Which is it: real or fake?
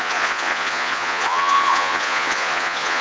fake